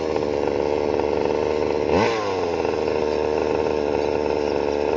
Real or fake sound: real